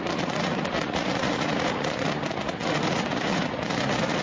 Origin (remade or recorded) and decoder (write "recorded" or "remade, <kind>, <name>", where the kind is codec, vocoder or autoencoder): remade, vocoder, Vocos